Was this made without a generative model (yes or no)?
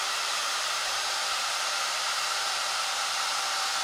no